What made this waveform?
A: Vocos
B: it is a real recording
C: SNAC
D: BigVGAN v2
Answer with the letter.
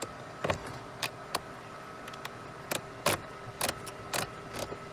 B